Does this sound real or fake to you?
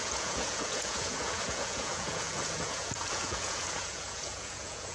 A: fake